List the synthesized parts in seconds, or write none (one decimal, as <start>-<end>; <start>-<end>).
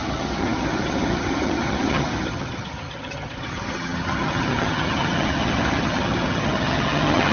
0.0-7.3